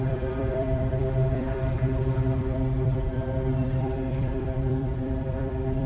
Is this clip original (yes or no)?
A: no